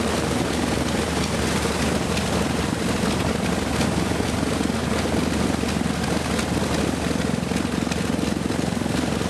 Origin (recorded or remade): recorded